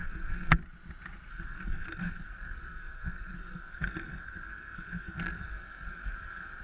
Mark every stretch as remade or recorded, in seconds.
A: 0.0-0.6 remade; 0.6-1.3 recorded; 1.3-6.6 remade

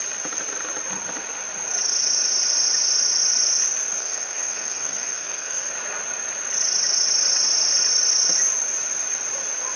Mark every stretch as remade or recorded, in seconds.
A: 0.0-4.0 recorded; 4.0-5.7 remade; 5.7-9.8 recorded